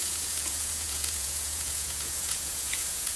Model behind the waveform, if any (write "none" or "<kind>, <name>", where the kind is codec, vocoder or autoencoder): vocoder, Vocos